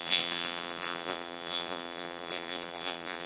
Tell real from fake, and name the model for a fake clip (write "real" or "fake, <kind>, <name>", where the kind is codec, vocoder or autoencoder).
fake, vocoder, BigVGAN v2